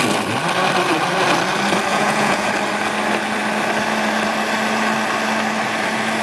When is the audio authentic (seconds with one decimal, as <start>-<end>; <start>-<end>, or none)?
0.0-1.9; 2.5-6.2